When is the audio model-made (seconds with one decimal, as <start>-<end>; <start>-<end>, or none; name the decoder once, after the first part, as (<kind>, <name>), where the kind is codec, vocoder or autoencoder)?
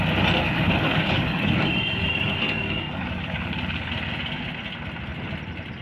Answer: 0.4-3.9 (codec, DAC)